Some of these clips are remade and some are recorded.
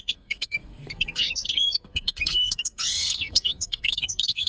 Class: remade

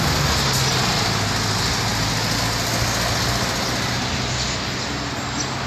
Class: recorded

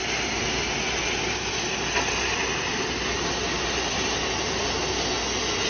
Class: recorded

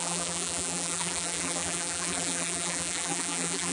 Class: remade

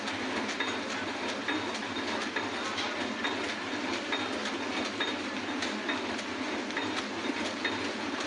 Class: recorded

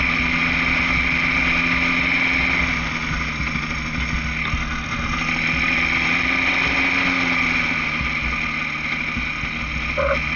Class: recorded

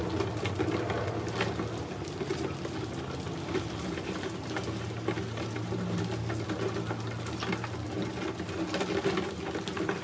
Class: recorded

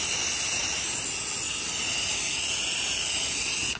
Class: recorded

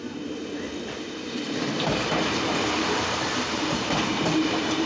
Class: remade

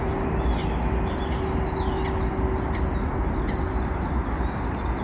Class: recorded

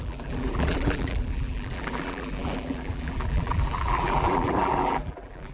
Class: remade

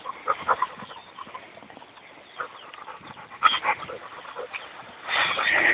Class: recorded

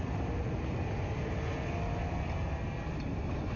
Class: recorded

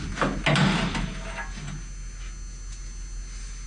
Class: recorded